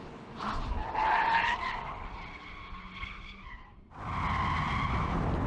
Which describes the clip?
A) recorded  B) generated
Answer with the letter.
A